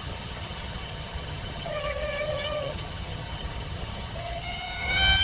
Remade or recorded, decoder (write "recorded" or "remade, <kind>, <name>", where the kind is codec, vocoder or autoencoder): remade, vocoder, HiFi-GAN